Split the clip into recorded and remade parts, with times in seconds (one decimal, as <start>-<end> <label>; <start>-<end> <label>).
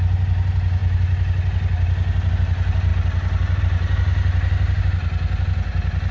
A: 0.0-6.1 recorded